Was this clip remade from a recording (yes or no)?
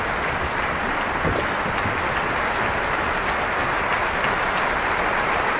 yes